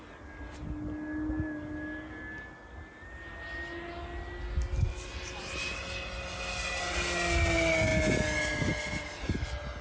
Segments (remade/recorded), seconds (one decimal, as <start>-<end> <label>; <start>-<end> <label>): 0.0-9.8 recorded